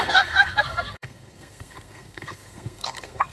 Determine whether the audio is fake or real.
fake